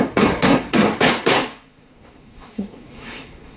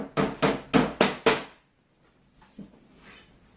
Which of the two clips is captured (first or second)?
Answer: second